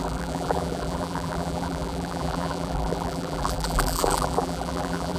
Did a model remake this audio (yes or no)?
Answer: yes